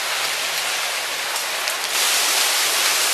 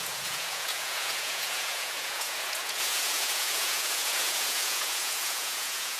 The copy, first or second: second